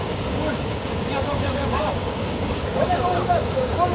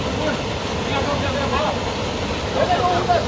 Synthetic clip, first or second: first